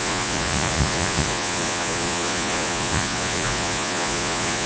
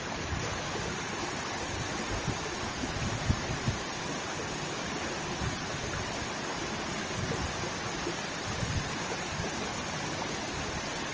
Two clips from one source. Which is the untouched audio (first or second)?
second